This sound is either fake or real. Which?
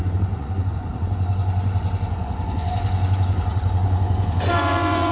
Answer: fake